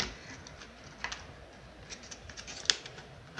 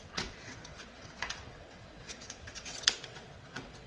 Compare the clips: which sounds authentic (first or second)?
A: first